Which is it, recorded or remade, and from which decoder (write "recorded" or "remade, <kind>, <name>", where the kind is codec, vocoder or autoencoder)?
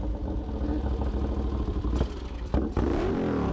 recorded